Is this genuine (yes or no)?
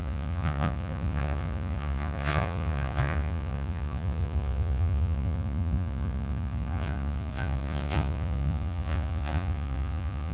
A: no